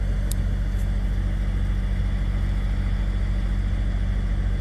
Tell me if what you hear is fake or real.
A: real